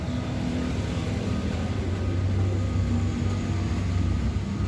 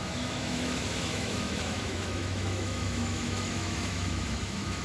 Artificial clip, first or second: second